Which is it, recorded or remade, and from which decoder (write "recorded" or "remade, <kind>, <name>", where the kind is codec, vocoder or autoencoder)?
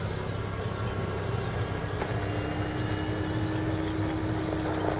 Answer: recorded